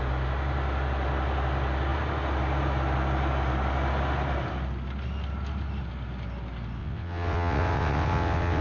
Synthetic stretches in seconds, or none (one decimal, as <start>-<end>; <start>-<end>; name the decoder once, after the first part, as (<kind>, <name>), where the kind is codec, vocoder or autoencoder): 6.8-8.6 (vocoder, WaveNeXt)